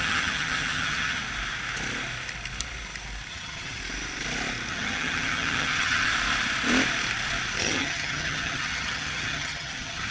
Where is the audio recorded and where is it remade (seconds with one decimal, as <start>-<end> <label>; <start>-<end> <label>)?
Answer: 0.0-1.2 remade; 1.2-3.3 recorded; 3.3-3.8 remade; 3.8-4.7 recorded; 4.7-6.1 remade; 6.1-7.6 recorded; 7.6-10.1 remade